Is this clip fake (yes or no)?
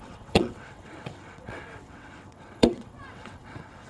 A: yes